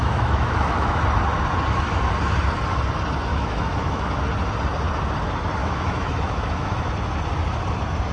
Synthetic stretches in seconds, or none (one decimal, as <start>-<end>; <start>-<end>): 0.0-1.0; 3.3-4.1; 5.6-6.8